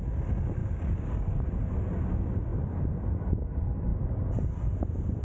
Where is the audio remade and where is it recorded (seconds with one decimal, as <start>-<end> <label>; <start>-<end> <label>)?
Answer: 0.0-0.6 recorded; 0.6-1.5 remade; 1.5-5.2 recorded